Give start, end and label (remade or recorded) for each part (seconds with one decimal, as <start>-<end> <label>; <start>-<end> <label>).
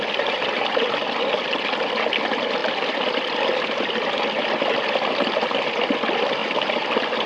0.0-2.6 recorded; 2.6-4.2 remade; 4.2-6.4 recorded; 6.4-7.3 remade